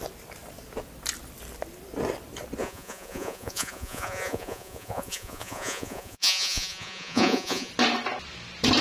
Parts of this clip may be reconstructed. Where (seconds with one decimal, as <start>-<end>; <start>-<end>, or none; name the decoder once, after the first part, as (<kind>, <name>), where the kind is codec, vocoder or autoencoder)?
2.6-7.7 (vocoder, Vocos)